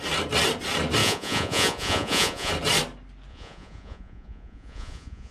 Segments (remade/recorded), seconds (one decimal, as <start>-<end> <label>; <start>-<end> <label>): 0.0-1.0 recorded; 1.0-2.5 remade; 2.5-3.3 recorded; 3.3-5.3 remade